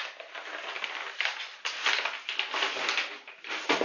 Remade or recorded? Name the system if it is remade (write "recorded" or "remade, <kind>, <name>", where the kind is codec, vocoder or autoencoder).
recorded